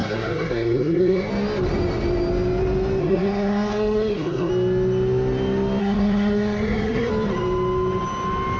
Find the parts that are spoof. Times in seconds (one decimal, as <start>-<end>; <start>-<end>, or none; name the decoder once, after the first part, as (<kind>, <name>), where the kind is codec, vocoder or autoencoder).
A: 0.0-1.3 (codec, SNAC); 3.0-4.5; 5.8-7.1